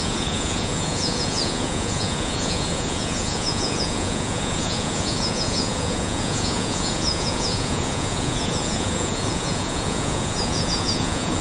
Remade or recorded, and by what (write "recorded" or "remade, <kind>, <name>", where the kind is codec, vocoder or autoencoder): remade, vocoder, Vocos